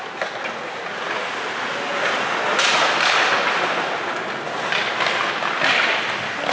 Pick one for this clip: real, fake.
real